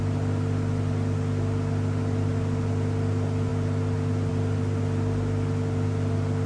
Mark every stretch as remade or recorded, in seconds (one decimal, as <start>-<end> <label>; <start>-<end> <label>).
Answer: 0.0-6.5 recorded